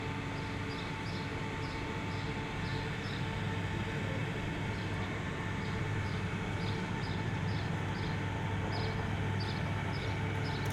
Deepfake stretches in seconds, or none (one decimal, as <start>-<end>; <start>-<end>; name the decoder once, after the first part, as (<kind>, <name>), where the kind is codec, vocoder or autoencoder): 1.3-2.1 (vocoder, BigVGAN v2); 2.7-3.4; 4.2-7.7